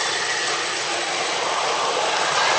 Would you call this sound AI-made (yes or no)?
no